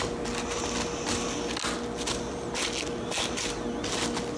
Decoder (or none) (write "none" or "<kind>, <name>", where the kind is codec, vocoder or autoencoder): none